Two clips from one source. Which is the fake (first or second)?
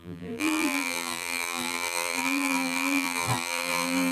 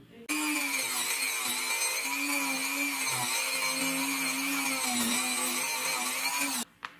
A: first